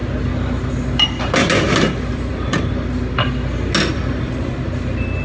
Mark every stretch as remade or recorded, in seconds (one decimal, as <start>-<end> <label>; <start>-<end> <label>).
0.0-1.4 recorded; 1.4-2.7 remade; 2.7-3.9 recorded; 3.9-4.5 remade; 4.5-5.2 recorded